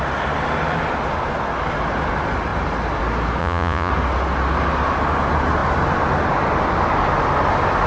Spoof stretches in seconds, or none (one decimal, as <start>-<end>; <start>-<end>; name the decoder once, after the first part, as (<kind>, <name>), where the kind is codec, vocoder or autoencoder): 3.4-3.9 (vocoder, Vocos)